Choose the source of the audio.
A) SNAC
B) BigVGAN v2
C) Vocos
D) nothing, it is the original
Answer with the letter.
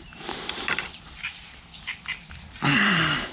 D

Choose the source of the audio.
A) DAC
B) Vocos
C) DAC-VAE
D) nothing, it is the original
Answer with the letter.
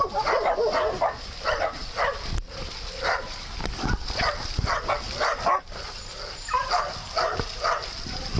D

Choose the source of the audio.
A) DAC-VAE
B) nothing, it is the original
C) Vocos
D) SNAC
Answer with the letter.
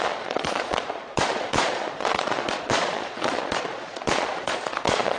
C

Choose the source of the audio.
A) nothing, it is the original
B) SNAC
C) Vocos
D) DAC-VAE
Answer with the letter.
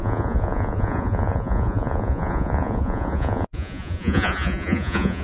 C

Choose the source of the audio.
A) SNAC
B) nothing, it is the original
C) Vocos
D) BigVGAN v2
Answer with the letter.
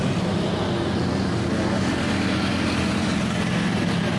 B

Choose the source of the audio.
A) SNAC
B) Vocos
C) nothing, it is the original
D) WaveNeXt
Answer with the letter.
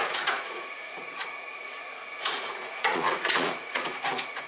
B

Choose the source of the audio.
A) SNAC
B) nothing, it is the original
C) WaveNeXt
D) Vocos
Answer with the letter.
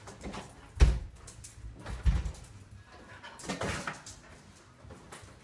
B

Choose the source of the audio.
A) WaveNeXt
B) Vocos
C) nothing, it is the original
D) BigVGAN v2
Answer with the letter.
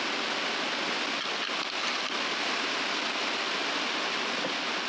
C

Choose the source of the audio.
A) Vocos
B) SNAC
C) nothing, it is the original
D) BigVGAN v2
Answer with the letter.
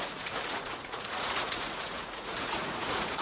A